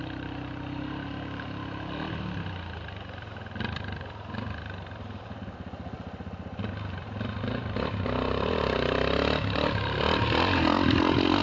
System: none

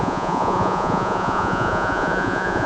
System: vocoder, Vocos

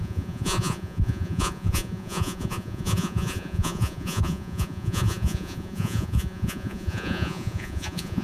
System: vocoder, Vocos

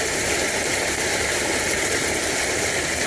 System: vocoder, BigVGAN v2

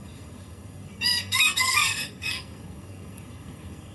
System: codec, SNAC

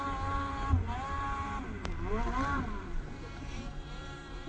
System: vocoder, BigVGAN v2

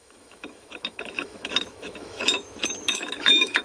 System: autoencoder, DAC-VAE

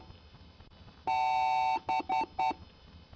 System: none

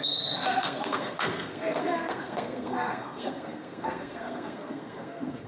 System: codec, SNAC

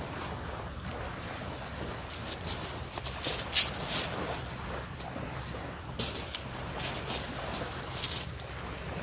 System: none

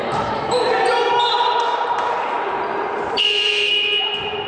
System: vocoder, BigVGAN v2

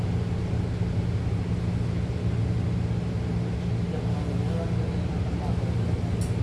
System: none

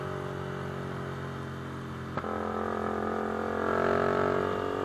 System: none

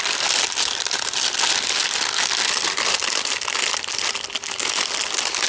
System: none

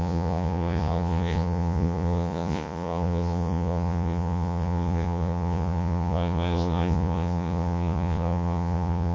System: vocoder, Vocos